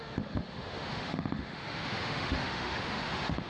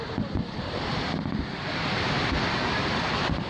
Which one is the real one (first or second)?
second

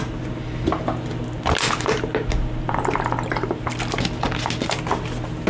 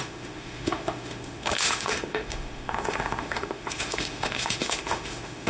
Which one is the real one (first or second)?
first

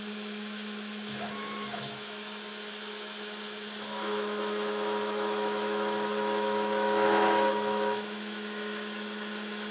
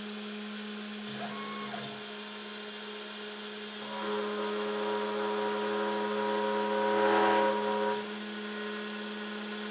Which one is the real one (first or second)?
second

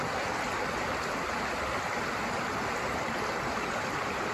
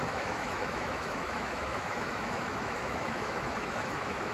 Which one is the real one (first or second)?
first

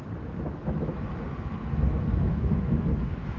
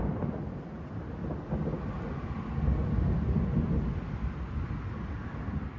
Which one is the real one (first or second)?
second